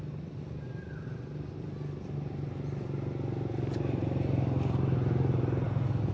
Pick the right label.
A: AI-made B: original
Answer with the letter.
B